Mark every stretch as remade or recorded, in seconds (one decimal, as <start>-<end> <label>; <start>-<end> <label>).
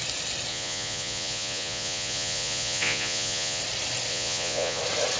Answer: 0.0-0.5 recorded; 0.5-3.6 remade; 3.6-4.1 recorded; 4.1-4.8 remade; 4.8-5.2 recorded